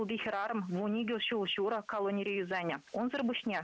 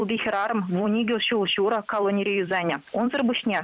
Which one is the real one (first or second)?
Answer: first